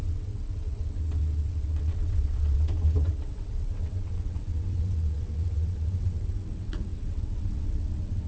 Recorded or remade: remade